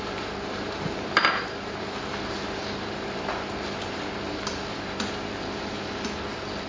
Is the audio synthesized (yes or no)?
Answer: yes